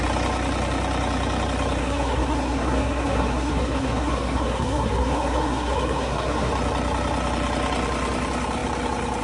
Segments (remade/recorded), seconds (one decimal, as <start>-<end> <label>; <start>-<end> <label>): 0.0-1.8 recorded; 1.8-6.5 remade; 6.5-9.2 recorded